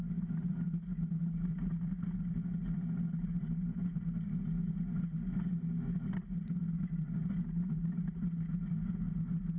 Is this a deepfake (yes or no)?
no